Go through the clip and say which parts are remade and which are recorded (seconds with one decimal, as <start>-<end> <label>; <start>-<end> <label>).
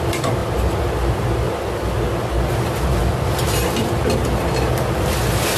0.0-5.6 recorded